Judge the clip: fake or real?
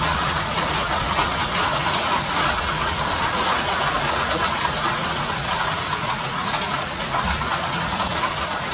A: fake